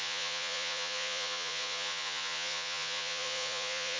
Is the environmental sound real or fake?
fake